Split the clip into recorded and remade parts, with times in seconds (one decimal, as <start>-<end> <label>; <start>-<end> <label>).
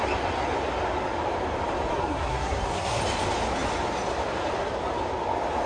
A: 0.0-1.9 recorded; 1.9-3.0 remade; 3.0-5.7 recorded